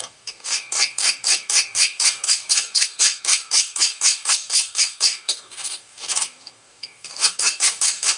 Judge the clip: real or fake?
fake